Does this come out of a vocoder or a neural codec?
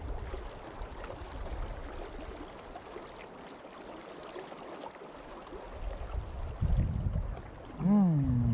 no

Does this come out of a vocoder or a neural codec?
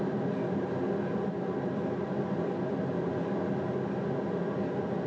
no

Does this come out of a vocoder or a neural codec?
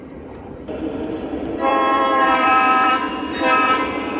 yes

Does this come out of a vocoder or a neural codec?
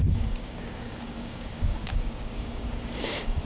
yes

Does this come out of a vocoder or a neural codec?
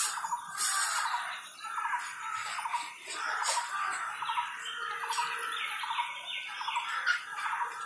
no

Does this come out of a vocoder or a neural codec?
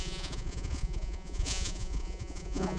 yes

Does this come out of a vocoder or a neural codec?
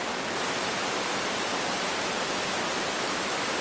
no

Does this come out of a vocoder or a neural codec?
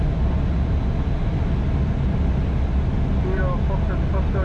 no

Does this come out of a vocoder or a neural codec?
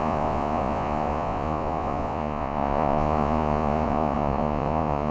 yes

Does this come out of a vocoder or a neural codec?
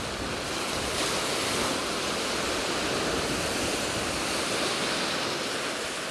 no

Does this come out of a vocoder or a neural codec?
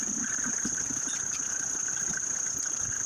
no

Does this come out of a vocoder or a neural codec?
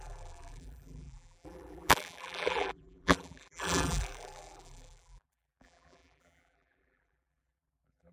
yes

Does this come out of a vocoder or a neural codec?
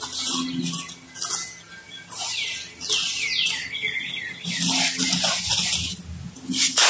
no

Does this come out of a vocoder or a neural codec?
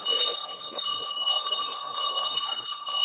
yes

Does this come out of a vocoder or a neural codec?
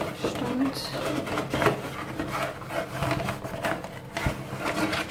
no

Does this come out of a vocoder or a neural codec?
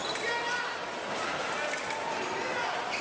no